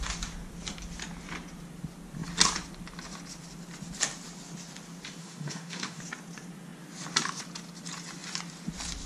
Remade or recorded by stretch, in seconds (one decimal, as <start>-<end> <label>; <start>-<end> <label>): 0.0-5.2 recorded; 5.2-6.0 remade; 6.0-9.1 recorded